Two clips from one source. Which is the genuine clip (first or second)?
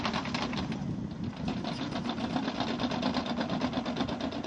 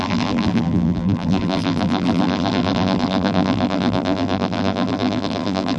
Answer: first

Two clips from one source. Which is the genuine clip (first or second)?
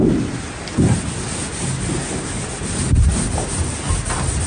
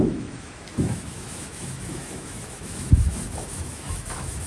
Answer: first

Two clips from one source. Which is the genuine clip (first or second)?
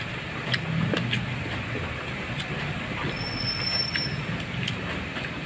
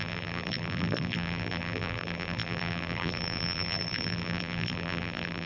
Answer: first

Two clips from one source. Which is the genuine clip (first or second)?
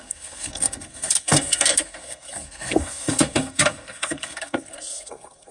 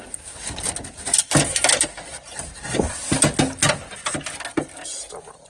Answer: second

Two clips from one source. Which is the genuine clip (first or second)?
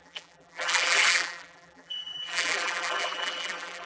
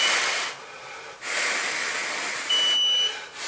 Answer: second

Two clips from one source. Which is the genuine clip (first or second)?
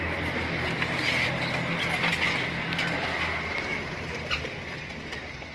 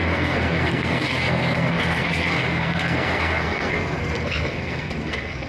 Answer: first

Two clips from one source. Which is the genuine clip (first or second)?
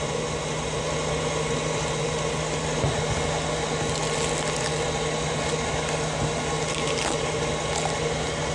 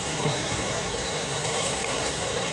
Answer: first